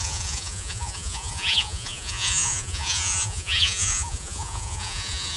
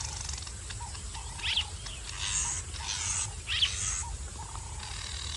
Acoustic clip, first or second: second